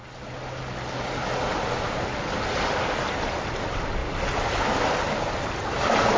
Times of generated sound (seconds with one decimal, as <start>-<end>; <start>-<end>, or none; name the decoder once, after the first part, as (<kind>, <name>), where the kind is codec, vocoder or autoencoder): none